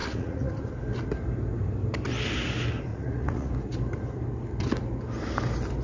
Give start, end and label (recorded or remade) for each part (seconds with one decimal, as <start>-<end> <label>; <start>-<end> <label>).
0.0-0.5 remade; 0.5-2.9 recorded; 2.9-3.5 remade; 3.5-5.8 recorded